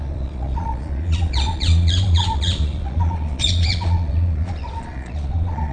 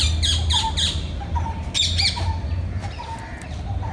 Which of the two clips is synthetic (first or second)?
first